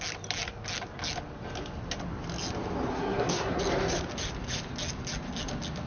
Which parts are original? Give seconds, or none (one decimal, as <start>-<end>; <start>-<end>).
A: 0.0-2.9; 3.6-5.9